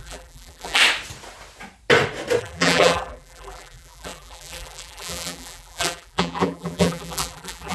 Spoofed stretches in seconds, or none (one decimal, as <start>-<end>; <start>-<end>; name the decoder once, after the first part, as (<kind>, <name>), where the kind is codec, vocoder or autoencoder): 0.0-0.8 (vocoder, BigVGAN v2); 2.4-7.7